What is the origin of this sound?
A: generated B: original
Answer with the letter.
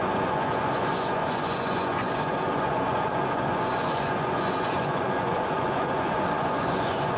A